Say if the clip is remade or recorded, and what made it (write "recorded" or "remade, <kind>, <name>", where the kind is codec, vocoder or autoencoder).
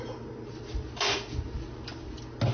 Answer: recorded